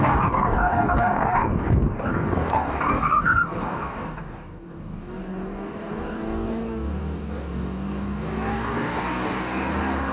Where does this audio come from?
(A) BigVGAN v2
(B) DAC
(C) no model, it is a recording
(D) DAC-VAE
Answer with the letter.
B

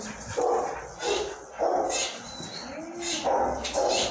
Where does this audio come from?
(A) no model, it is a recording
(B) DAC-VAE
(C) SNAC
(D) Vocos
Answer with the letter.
A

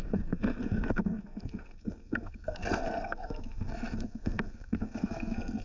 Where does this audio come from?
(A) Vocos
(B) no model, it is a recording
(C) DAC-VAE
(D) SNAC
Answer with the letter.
D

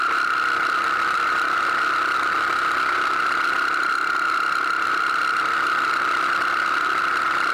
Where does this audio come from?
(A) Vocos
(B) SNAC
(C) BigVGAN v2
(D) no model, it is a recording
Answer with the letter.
C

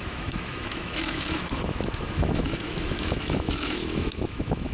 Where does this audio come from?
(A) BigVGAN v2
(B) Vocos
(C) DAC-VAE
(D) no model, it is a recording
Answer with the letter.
C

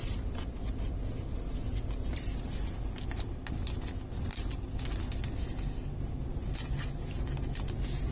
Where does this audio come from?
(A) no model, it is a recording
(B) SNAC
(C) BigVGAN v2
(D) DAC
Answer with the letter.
A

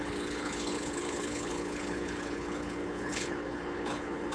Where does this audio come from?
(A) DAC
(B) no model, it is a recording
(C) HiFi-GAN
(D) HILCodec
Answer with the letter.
D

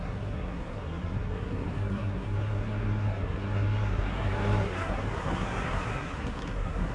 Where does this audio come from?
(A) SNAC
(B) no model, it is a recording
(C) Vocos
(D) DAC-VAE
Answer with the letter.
A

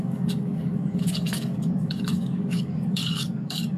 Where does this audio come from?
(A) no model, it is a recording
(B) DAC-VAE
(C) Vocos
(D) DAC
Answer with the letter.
D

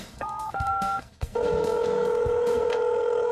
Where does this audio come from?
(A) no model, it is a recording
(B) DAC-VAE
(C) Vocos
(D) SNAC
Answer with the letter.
D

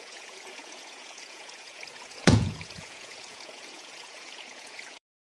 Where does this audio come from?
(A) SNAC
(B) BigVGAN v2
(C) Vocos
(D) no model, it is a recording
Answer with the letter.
C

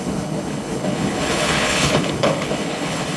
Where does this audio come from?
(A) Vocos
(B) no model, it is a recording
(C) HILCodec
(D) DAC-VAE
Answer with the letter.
C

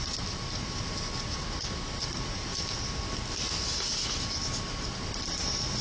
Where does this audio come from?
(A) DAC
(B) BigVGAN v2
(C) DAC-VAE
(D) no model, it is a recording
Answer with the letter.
D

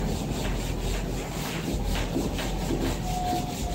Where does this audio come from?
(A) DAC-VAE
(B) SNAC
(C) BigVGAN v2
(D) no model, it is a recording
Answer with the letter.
D